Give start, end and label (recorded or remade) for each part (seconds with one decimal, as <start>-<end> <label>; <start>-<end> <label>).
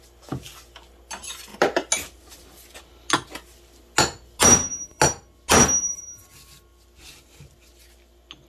0.0-8.5 recorded